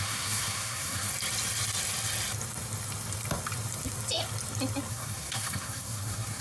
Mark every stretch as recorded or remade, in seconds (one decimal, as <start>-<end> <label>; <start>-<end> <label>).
0.0-1.1 remade; 1.1-4.9 recorded; 4.9-6.4 remade